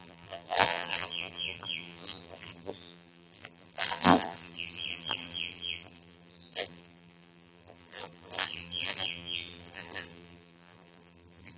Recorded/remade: remade